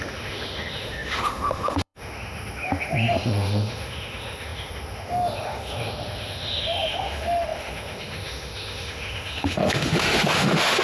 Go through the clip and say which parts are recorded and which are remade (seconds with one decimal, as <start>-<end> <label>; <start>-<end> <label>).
0.0-10.8 remade